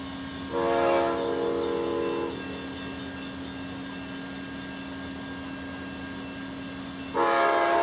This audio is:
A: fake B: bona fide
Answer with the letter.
B